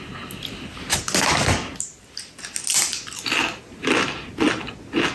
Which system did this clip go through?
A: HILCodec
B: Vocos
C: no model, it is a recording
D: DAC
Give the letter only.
C